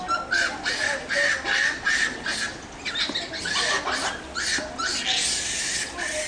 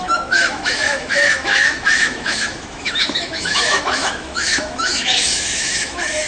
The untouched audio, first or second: first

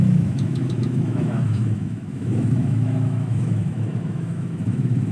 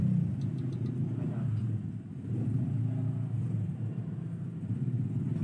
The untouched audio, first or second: second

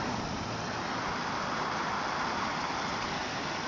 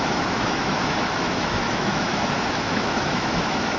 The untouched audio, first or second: first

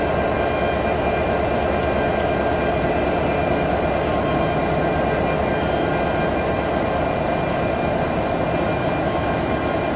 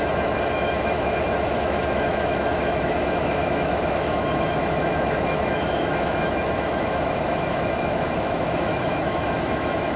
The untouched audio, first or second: first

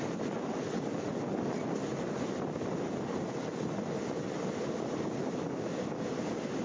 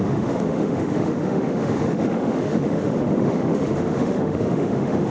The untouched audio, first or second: first